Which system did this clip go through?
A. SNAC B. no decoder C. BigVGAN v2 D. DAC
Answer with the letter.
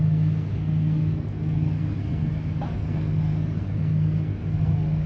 A